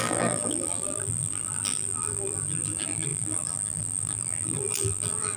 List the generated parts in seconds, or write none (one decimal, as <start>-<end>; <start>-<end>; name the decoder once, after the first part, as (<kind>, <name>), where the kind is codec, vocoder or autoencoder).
0.0-5.4 (vocoder, BigVGAN v2)